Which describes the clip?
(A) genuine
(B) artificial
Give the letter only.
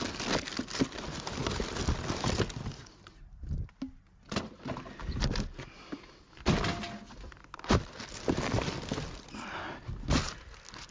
A